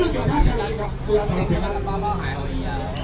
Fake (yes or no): no